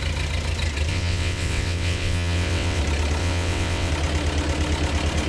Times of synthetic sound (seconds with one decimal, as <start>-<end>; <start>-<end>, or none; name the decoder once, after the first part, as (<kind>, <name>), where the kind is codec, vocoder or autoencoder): 0.9-2.8 (vocoder, WaveNeXt); 3.2-3.9